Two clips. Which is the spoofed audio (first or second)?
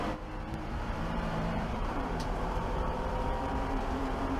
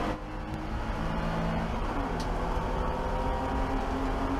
first